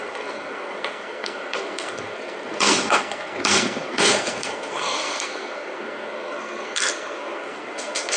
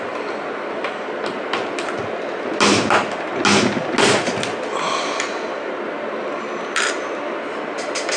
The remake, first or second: first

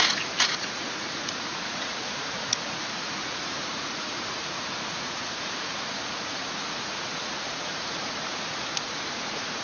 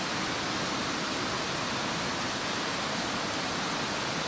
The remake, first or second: first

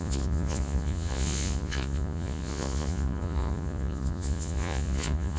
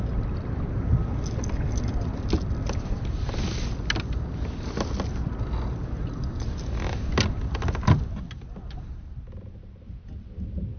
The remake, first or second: first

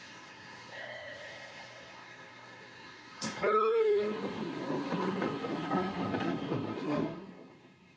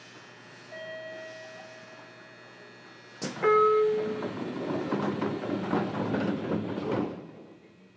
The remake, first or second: first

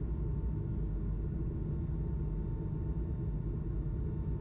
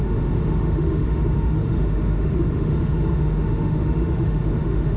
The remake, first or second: second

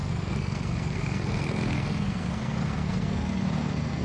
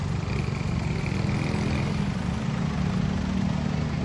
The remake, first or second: first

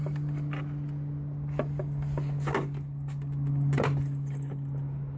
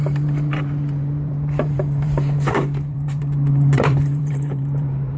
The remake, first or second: second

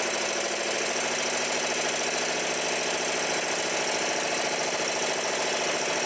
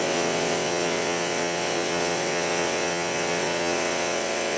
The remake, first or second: second